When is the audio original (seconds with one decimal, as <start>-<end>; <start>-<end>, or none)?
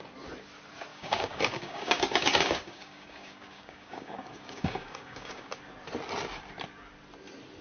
0.0-0.9; 5.5-7.6